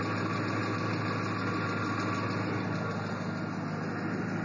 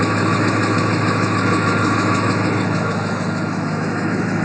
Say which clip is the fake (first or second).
second